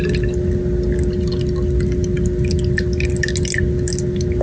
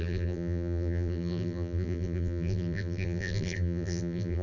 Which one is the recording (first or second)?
first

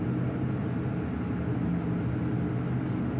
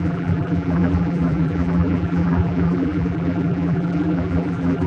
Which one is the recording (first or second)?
first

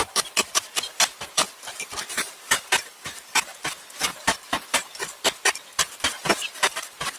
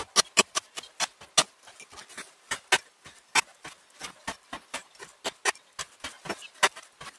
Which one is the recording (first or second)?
second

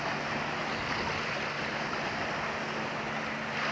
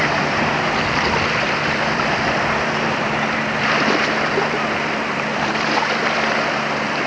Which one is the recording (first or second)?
first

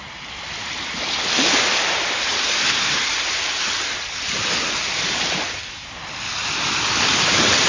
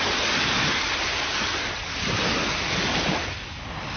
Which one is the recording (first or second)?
second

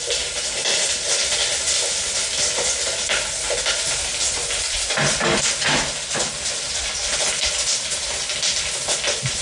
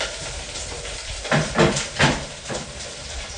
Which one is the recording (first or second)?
first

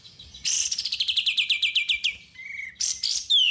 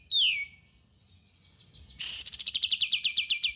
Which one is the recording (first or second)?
second